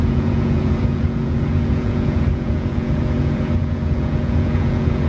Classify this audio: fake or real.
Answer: fake